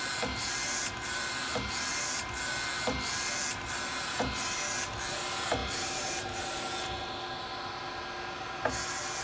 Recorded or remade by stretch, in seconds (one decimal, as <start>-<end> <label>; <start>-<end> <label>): 0.0-5.6 recorded; 5.6-6.6 remade; 6.6-9.2 recorded